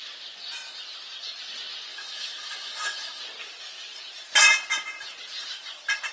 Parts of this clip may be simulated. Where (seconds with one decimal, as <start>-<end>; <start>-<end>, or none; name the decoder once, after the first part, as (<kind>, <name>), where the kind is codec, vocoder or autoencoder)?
1.9-3.2 (autoencoder, DAC-VAE)